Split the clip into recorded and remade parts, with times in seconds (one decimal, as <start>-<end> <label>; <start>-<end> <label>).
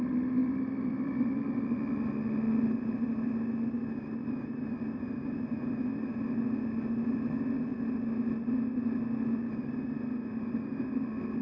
0.0-0.4 recorded; 0.4-1.1 remade; 1.1-11.4 recorded